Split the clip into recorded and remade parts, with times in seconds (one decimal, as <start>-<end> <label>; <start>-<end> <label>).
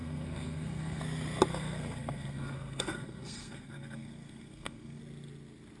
0.0-1.0 remade; 1.0-1.5 recorded; 1.5-5.0 remade; 5.0-5.8 recorded